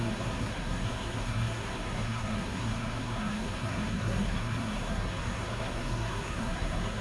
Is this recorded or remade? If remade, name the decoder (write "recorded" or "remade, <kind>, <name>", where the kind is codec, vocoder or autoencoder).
remade, codec, SNAC